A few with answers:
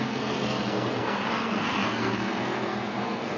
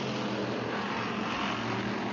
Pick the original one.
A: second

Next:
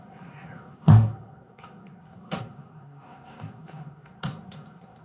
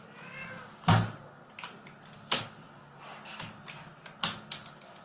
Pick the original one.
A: second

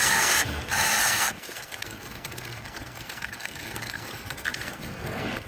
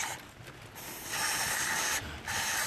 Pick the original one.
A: second